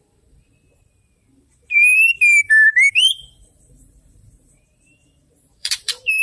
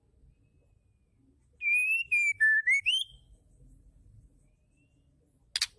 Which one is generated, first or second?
first